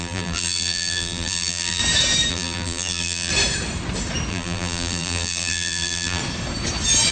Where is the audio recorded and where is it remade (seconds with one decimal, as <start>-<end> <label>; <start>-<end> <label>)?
0.0-1.8 remade; 1.8-2.3 recorded; 2.3-3.3 remade; 3.3-4.3 recorded; 4.3-6.2 remade; 6.2-7.1 recorded